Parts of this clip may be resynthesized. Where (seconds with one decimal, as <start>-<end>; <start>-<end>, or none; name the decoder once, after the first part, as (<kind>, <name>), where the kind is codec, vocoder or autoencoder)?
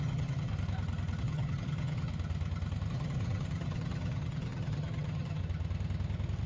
0.0-0.5 (vocoder, HiFi-GAN); 1.2-2.1; 2.9-5.4